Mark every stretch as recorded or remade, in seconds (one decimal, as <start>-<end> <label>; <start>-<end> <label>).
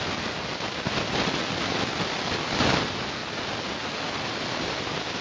0.0-5.2 recorded